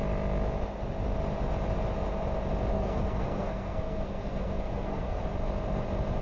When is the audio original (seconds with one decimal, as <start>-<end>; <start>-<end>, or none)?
0.0-2.7; 5.2-6.2